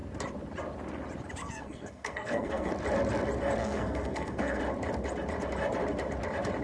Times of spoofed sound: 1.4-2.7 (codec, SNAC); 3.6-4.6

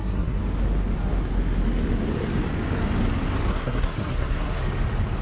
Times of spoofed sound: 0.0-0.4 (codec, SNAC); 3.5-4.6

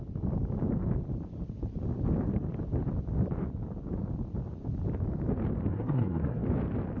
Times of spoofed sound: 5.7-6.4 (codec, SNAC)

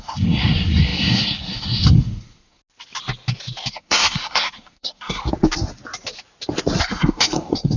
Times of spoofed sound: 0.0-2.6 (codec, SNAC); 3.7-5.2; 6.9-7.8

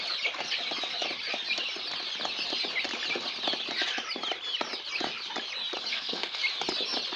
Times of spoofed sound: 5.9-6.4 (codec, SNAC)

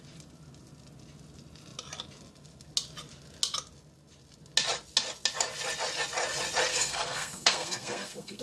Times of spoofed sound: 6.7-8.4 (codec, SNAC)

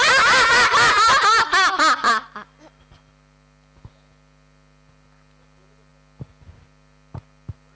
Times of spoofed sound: none